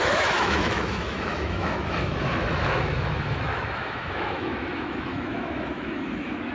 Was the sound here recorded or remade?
remade